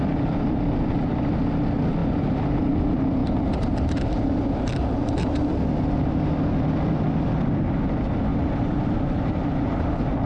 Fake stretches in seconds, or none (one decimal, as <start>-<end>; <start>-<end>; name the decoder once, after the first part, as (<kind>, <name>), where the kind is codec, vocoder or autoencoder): 4.8-5.5 (vocoder, BigVGAN v2)